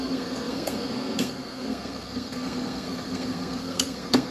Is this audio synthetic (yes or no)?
yes